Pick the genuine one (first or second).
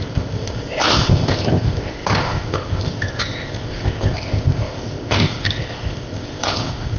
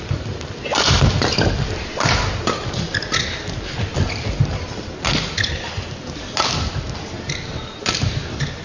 second